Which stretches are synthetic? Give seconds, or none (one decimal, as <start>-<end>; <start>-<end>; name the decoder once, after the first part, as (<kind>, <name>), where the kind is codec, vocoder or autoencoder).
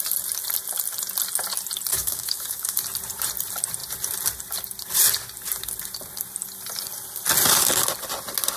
1.9-2.8 (autoencoder, DAC-VAE)